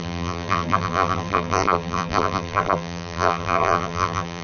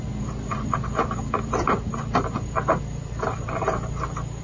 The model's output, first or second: first